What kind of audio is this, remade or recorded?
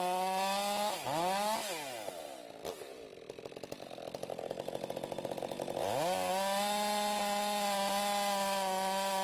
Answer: recorded